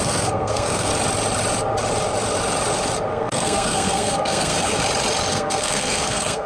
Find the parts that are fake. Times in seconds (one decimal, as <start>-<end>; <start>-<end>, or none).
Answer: 0.0-0.9; 3.1-4.8; 5.3-6.5